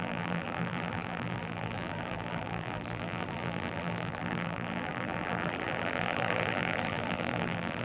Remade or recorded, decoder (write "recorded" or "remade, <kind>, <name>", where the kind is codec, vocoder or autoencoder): remade, vocoder, BigVGAN v2